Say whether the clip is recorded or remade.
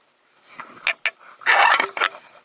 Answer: recorded